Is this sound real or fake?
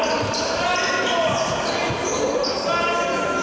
real